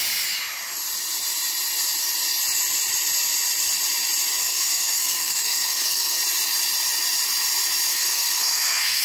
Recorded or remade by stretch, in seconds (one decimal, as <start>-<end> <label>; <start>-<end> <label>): 0.0-4.4 recorded; 4.4-6.2 remade; 6.2-7.9 recorded; 7.9-9.0 remade